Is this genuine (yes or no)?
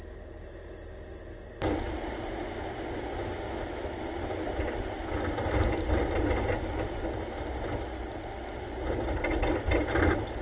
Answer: yes